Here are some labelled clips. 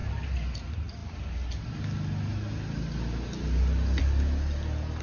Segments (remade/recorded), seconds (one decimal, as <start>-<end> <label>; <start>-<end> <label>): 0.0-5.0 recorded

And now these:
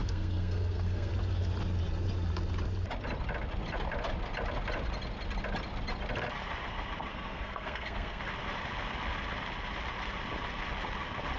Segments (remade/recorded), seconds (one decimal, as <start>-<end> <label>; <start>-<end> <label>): 0.0-1.1 remade; 1.1-7.1 recorded; 7.1-8.2 remade; 8.2-11.4 recorded

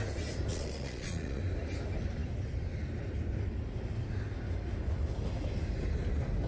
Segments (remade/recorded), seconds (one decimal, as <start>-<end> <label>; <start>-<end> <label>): 0.0-0.5 recorded; 0.5-1.4 remade; 1.4-6.5 recorded

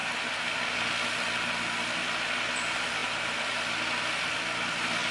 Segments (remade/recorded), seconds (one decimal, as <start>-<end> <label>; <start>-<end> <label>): 0.0-5.1 recorded

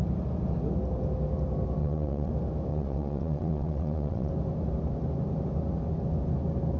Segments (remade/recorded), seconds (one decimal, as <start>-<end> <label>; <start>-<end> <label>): 0.0-1.8 recorded; 1.8-2.3 remade; 2.3-2.7 recorded; 2.7-4.3 remade; 4.3-6.8 recorded

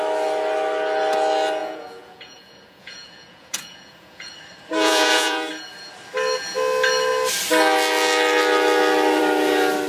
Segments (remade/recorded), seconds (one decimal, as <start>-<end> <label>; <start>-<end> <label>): 0.0-1.6 recorded; 1.6-4.3 remade; 4.3-4.7 recorded; 4.7-5.5 remade; 5.5-9.9 recorded

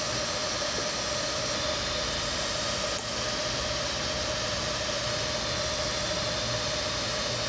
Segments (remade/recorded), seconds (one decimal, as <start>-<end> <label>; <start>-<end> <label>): 0.0-7.5 recorded